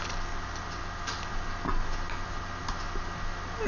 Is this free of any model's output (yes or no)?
yes